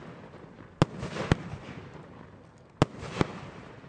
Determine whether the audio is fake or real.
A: real